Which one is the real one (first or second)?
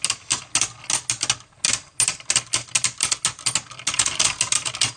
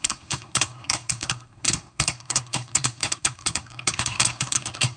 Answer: first